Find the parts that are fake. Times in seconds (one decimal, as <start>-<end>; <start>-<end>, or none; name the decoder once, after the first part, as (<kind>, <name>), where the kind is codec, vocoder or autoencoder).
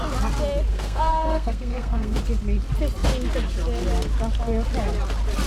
0.7-2.2 (codec, SNAC)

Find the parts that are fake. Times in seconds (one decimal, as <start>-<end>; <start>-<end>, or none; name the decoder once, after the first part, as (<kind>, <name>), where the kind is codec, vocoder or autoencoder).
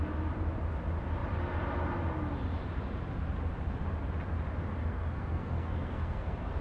4.8-6.6 (codec, SNAC)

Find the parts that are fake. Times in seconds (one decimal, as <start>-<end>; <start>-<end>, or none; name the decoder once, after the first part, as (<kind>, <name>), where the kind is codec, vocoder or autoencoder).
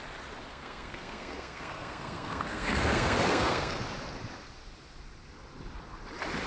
0.5-3.8 (codec, SNAC)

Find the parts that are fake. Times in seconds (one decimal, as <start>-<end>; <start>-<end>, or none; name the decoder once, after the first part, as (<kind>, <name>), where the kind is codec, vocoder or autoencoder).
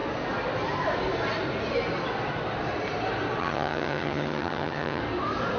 3.4-5.0 (vocoder, HiFi-GAN)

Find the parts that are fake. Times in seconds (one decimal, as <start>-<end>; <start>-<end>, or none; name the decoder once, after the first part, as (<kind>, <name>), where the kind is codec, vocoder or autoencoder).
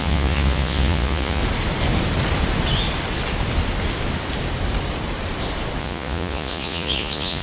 0.0-1.4 (vocoder, Vocos); 5.8-7.4